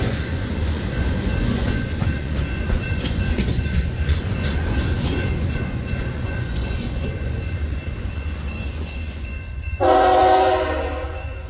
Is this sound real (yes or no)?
no